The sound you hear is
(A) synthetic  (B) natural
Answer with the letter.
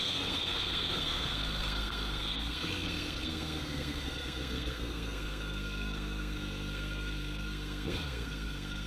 A